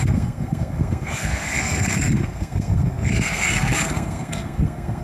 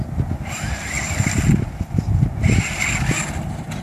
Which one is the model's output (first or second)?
first